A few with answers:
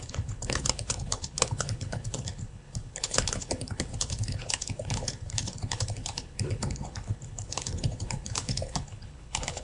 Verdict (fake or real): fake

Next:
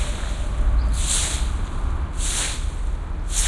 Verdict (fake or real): real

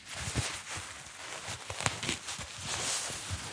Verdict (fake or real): real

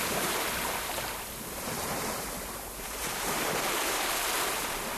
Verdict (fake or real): fake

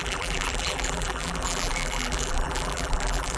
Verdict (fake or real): fake